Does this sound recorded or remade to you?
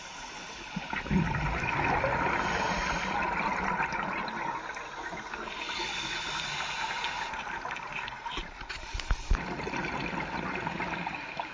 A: recorded